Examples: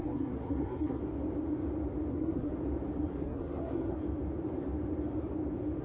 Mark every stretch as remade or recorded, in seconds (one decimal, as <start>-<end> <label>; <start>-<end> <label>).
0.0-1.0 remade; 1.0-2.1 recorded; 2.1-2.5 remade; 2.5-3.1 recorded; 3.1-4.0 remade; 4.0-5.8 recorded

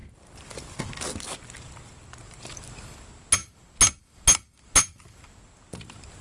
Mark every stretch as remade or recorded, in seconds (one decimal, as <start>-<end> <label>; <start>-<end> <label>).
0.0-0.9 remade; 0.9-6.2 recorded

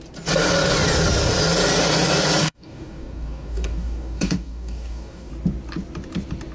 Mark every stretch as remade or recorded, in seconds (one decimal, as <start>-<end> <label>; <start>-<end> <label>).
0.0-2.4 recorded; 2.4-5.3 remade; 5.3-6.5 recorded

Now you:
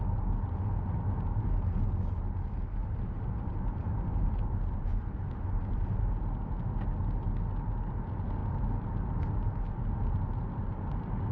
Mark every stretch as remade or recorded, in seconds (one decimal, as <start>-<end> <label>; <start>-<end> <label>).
0.0-2.8 recorded; 2.8-6.1 remade; 6.1-11.3 recorded

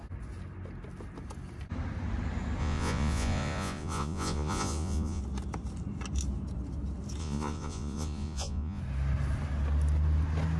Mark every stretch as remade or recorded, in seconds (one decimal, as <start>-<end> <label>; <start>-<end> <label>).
0.0-2.6 recorded; 2.6-5.2 remade; 5.2-7.2 recorded; 7.2-8.8 remade; 8.8-10.6 recorded